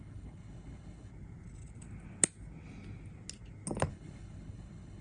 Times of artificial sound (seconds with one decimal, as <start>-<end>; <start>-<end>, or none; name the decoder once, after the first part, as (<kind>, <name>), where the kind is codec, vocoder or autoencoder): 0.0-1.1 (codec, HILCodec); 3.9-5.0